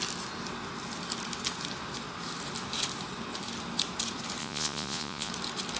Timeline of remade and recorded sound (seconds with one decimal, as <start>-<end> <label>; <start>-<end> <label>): 0.0-4.4 recorded; 4.4-5.3 remade; 5.3-5.8 recorded